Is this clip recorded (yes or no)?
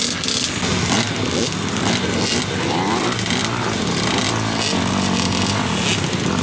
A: yes